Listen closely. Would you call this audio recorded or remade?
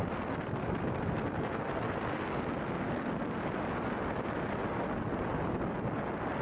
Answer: remade